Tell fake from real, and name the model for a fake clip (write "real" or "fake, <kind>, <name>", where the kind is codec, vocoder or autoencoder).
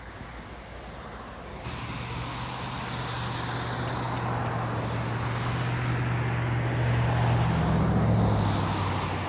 real